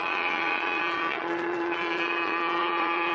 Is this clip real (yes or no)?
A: no